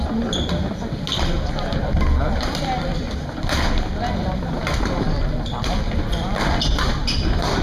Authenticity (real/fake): real